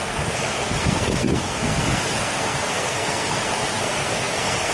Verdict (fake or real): fake